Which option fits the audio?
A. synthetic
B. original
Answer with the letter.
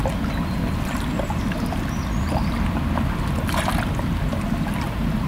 B